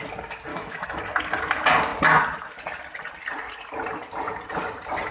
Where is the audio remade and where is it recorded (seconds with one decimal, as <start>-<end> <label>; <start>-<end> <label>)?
0.0-0.5 recorded; 0.5-1.0 remade; 1.0-5.1 recorded